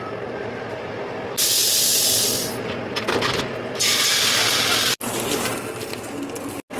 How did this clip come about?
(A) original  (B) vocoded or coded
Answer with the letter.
A